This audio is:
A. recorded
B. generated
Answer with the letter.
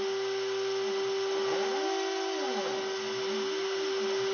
A